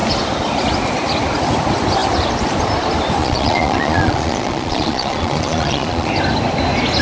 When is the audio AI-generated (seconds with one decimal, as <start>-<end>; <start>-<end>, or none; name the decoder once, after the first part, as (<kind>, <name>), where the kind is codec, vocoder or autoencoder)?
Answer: 3.2-6.1 (vocoder, Vocos)